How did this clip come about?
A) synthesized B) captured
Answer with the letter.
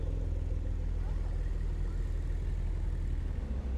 B